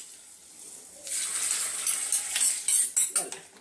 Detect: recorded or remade recorded